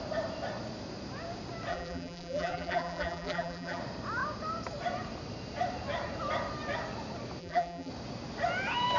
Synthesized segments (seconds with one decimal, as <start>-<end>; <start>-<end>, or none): 1.7-3.8; 7.4-7.9

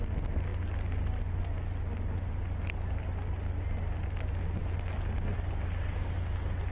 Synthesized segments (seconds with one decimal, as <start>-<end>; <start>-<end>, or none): none

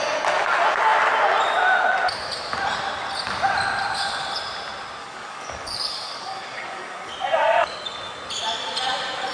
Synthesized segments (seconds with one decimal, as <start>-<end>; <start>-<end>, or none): 5.0-7.1

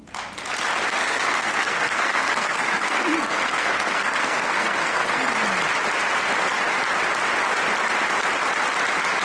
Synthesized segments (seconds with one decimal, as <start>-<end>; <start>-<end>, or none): 1.0-5.3

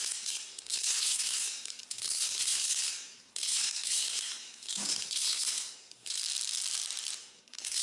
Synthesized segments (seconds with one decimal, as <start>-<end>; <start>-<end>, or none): 0.0-6.2; 7.2-7.8

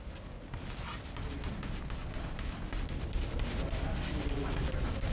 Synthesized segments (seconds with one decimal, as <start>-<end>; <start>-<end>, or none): none